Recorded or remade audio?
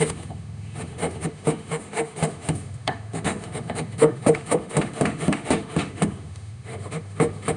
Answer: remade